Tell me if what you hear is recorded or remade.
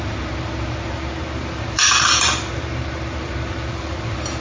remade